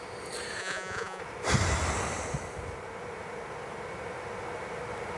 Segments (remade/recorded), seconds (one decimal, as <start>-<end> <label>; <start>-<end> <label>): 0.0-0.6 recorded; 0.6-1.2 remade; 1.2-5.2 recorded